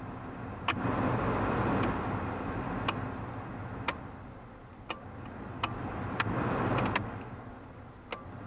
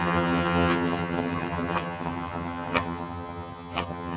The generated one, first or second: second